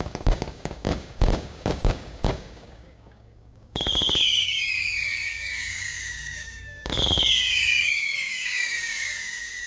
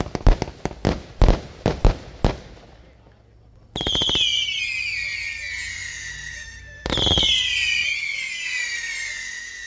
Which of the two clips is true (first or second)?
second